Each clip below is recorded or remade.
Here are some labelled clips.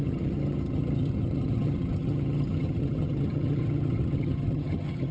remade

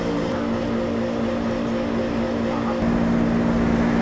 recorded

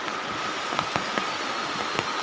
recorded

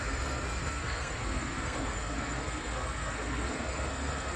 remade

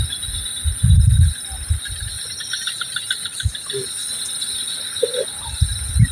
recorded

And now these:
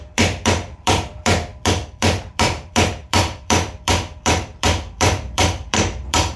remade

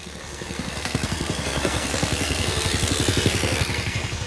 remade